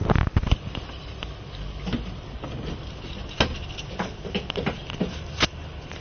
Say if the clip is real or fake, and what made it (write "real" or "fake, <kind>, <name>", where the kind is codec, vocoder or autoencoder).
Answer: real